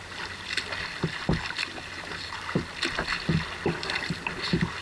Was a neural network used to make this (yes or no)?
no